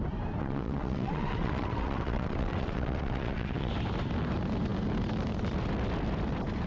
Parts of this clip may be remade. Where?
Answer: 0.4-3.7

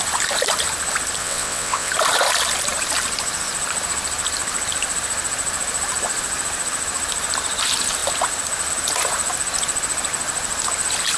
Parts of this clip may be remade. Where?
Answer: 1.2-1.9

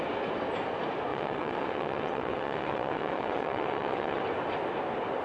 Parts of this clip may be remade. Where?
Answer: 1.1-4.2

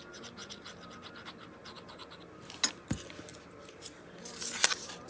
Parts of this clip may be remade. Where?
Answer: none

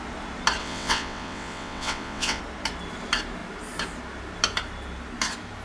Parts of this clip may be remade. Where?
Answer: 0.6-2.4

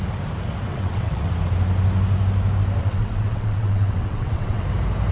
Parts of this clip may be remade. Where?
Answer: 0.7-1.3; 2.8-4.6

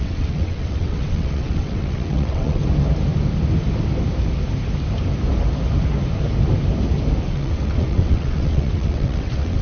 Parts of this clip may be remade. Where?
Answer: 0.0-2.6; 7.2-9.6

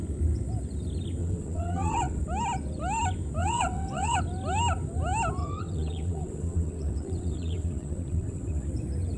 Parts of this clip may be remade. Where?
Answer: 1.2-2.2; 3.4-4.2; 5.4-8.7